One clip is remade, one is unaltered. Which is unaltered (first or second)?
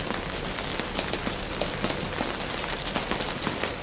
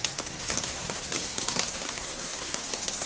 first